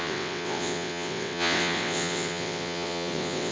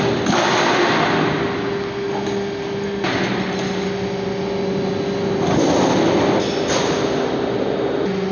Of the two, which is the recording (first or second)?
second